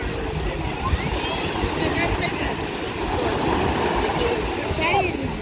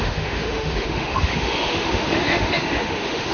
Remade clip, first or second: second